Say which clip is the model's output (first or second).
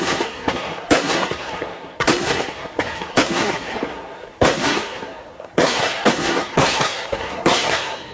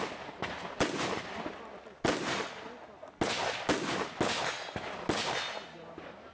first